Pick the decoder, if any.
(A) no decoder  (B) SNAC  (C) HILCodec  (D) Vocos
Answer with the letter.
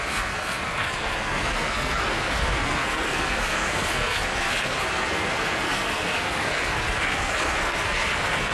B